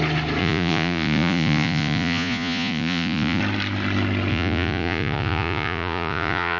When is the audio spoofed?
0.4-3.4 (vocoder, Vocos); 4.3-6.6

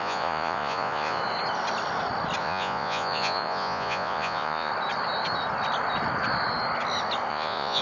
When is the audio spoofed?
0.0-1.2 (vocoder, Vocos); 2.4-4.7; 7.3-7.8